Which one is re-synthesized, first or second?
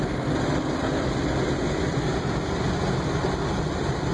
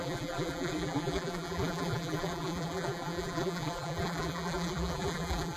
second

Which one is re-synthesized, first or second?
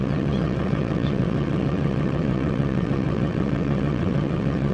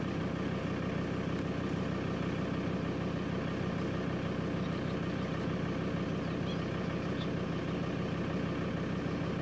first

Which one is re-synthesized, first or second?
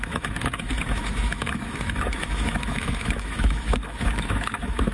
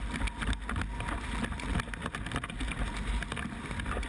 first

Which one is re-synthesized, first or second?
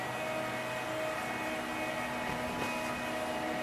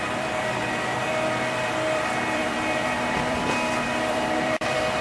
second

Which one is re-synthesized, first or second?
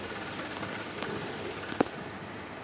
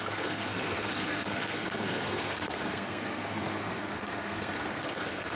second